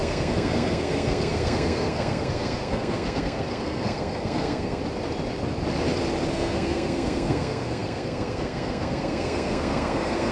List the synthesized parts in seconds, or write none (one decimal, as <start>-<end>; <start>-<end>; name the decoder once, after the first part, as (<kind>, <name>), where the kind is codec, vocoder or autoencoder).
0.0-4.8 (codec, SNAC); 6.3-10.3